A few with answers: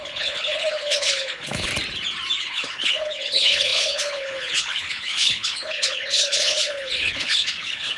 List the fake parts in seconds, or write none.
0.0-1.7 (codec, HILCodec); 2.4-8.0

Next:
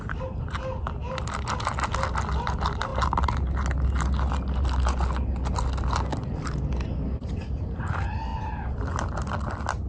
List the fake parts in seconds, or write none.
none

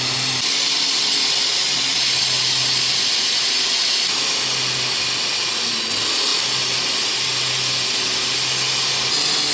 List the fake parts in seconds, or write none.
none

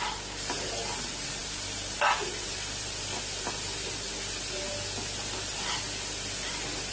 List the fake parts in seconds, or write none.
none